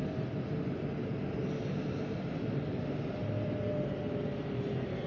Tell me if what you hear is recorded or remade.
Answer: recorded